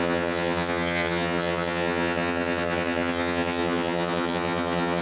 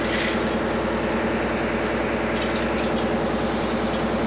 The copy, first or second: first